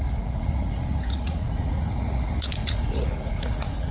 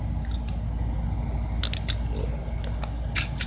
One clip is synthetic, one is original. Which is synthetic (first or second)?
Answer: first